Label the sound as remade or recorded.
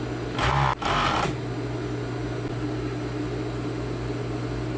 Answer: recorded